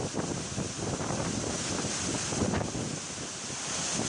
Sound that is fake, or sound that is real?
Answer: real